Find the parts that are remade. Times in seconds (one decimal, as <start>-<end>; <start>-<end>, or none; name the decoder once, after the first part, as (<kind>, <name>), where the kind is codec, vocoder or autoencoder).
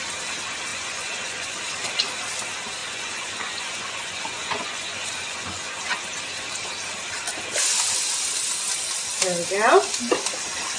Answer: 0.7-1.6 (vocoder, Vocos); 2.8-6.0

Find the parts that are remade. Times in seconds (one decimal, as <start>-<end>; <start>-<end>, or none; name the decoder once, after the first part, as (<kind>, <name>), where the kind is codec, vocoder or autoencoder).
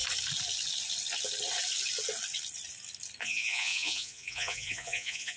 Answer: 3.2-5.4 (vocoder, Vocos)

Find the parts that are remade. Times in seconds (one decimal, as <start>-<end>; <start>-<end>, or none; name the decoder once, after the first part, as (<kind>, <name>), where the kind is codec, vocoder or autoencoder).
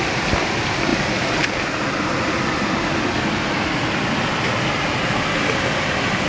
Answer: none